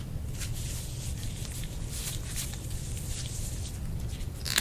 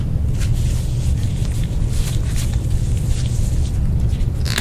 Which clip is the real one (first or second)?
second